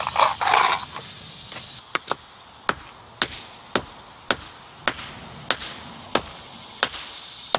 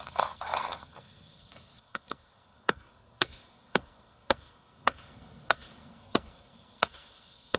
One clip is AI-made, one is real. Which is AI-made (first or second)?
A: second